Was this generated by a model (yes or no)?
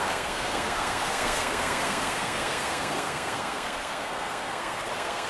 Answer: yes